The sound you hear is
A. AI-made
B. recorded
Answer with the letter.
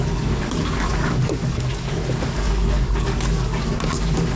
A